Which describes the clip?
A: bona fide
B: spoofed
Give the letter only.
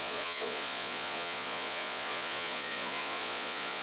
B